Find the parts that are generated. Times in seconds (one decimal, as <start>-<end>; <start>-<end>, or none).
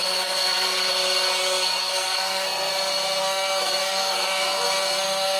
0.0-0.9; 1.8-2.7; 3.2-5.4